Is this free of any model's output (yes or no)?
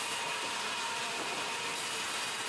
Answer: yes